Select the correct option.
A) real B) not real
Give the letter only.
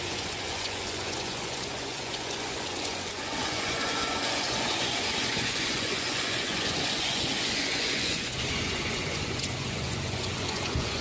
B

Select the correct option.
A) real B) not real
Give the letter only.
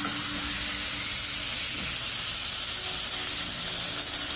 A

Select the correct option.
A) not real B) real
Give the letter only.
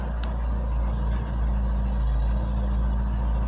B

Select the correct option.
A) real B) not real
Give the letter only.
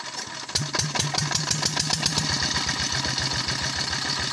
A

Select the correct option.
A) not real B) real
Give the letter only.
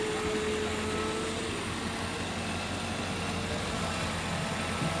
B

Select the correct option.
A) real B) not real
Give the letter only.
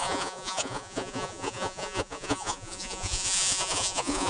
B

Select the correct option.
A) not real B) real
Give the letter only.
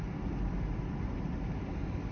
B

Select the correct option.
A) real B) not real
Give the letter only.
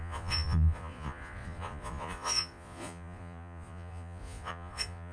B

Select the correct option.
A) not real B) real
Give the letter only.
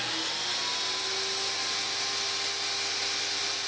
B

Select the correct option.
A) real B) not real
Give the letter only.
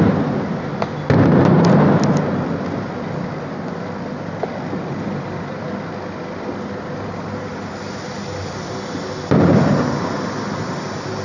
A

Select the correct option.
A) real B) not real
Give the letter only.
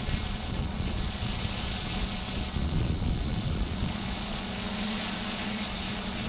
B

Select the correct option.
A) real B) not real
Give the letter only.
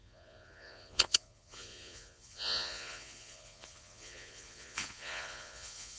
B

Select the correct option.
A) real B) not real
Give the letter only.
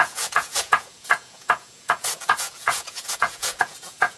B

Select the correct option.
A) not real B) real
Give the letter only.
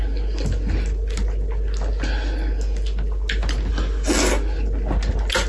B